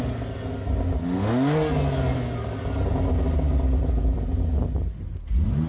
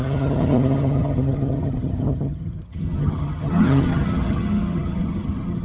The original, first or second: first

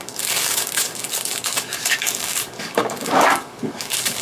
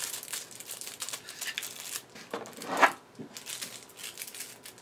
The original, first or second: second